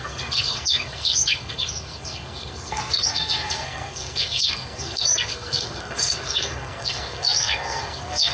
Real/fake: fake